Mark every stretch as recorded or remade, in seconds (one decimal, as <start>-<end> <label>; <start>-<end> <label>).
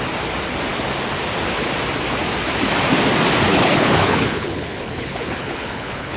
0.0-3.5 recorded; 3.5-6.2 remade